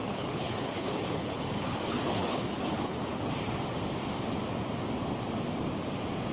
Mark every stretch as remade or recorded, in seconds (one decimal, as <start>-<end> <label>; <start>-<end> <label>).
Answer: 0.0-3.3 remade; 3.3-6.3 recorded